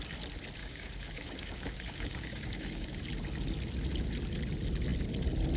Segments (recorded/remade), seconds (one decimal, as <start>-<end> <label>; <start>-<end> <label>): 0.0-0.6 recorded; 0.6-3.0 remade; 3.0-5.6 recorded